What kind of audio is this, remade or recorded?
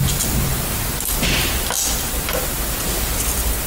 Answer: recorded